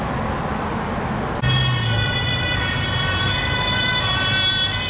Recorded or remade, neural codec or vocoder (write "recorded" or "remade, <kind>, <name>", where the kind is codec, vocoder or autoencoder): recorded